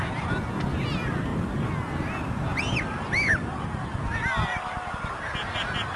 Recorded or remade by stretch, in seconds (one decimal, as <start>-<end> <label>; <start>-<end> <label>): 0.0-6.0 recorded